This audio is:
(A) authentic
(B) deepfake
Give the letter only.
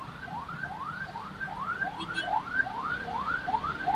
B